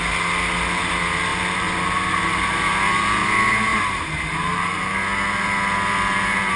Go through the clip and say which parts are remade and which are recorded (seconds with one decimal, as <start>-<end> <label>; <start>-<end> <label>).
0.0-1.3 recorded; 1.3-2.5 remade; 2.5-3.7 recorded; 3.7-4.9 remade; 4.9-6.6 recorded